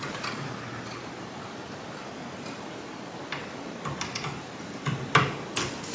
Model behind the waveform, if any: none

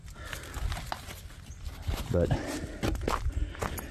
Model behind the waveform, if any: none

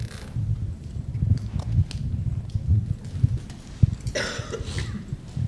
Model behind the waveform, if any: none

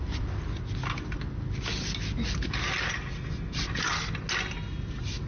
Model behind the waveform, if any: none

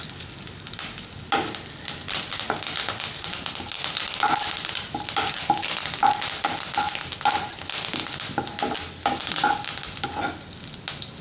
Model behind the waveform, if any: none